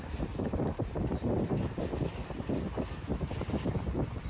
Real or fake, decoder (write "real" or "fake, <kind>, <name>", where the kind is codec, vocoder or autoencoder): fake, vocoder, BigVGAN v2